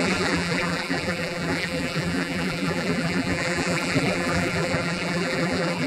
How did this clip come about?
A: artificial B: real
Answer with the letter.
A